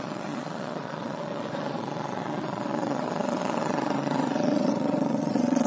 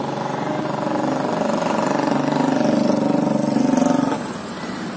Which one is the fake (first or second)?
first